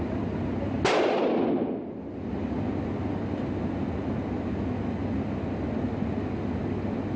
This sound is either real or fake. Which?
real